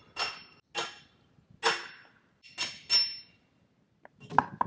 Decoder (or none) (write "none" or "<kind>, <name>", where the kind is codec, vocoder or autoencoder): none